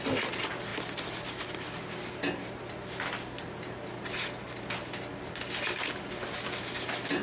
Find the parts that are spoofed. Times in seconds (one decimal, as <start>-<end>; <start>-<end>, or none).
none